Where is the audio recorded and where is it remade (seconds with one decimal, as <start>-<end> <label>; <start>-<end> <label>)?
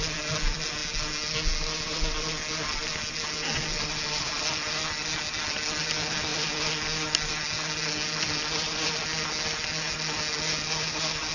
0.0-11.3 recorded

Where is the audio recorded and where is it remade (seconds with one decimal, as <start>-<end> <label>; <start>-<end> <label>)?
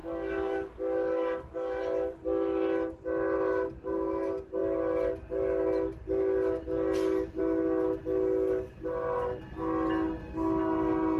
0.0-1.8 remade; 1.8-11.2 recorded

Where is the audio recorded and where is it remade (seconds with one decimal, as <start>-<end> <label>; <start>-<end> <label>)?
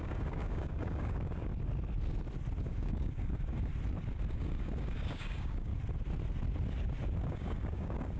0.0-1.5 remade; 1.5-2.6 recorded; 2.6-3.7 remade; 3.7-4.3 recorded; 4.3-5.7 remade; 5.7-7.2 recorded; 7.2-8.2 remade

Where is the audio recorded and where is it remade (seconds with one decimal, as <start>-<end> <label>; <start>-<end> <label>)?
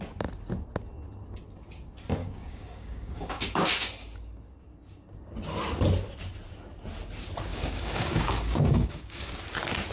0.0-2.2 recorded; 2.2-3.9 remade; 3.9-7.5 recorded; 7.5-9.4 remade; 9.4-9.9 recorded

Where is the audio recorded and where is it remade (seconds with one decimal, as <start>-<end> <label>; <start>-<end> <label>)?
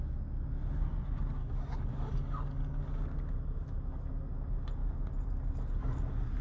0.0-1.4 recorded; 1.4-3.0 remade; 3.0-6.4 recorded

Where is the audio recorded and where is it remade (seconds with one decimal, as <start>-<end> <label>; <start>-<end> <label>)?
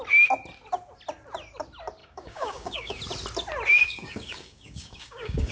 0.0-2.0 recorded; 2.0-3.0 remade; 3.0-3.8 recorded; 3.8-5.5 remade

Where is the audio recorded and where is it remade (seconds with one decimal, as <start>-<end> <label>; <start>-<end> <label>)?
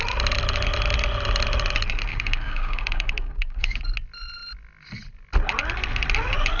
0.0-2.1 recorded; 2.1-3.8 remade; 3.8-6.6 recorded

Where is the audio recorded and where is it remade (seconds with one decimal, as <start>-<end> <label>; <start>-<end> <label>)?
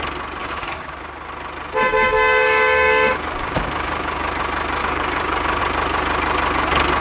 0.0-0.4 recorded; 0.4-1.0 remade; 1.0-1.8 recorded; 1.8-4.3 remade; 4.3-4.8 recorded; 4.8-5.6 remade; 5.6-7.0 recorded